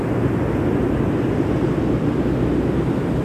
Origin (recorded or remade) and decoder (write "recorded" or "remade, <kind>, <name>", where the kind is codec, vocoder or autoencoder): recorded